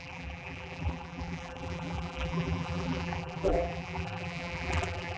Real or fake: fake